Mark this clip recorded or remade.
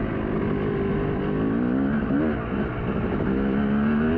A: recorded